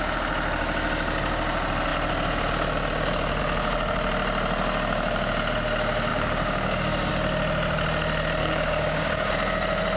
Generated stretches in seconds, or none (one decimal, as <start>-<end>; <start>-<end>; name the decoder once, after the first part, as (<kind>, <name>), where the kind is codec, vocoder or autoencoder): 6.1-7.1 (codec, DAC); 8.4-9.3